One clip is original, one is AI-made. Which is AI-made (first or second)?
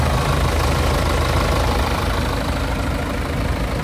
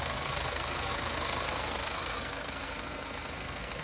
second